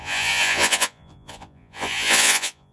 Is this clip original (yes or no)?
no